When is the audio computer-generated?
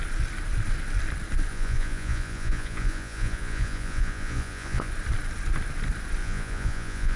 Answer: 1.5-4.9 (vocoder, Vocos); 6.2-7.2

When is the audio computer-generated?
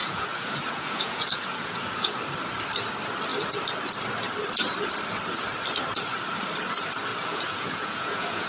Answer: 0.0-2.2 (vocoder, Vocos); 7.1-8.5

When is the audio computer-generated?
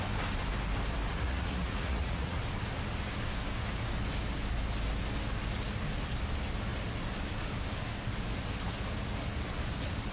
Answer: 1.1-2.4 (vocoder, Vocos)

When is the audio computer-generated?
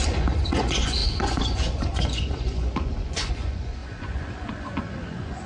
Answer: 0.0-5.5 (vocoder, Vocos)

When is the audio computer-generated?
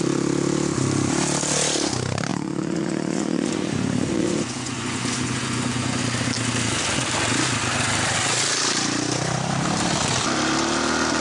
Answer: 2.3-6.0 (vocoder, Vocos)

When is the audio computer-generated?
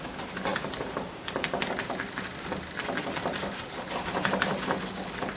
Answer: none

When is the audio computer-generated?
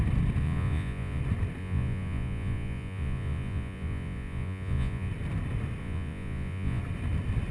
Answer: 0.4-1.2 (vocoder, Vocos); 1.6-5.1; 5.8-6.8